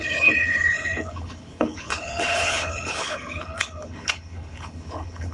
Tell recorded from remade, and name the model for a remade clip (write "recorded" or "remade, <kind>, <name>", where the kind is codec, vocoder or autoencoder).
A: remade, codec, HILCodec